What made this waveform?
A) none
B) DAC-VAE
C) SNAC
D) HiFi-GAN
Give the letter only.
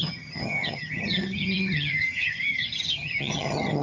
D